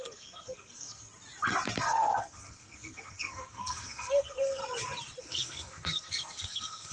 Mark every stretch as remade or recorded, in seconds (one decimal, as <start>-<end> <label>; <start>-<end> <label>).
0.0-1.1 remade; 1.1-1.8 recorded; 1.8-4.6 remade; 4.6-5.2 recorded; 5.2-6.9 remade